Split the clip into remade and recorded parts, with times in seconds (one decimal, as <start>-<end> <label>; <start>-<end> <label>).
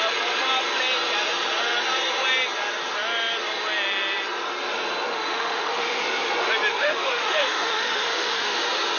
0.0-5.1 recorded; 5.1-6.0 remade; 6.0-6.7 recorded; 6.7-8.6 remade; 8.6-9.0 recorded